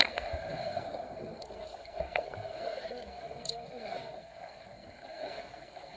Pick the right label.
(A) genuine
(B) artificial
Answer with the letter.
B